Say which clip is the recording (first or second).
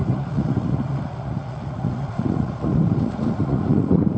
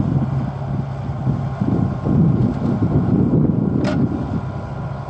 second